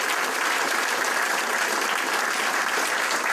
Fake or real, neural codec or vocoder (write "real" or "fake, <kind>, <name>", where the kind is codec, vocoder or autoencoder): fake, vocoder, BigVGAN v2